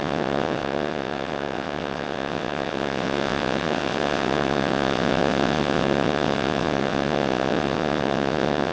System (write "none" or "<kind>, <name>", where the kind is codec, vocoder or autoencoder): vocoder, WaveNeXt